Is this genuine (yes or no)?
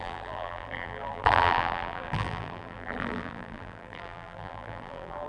no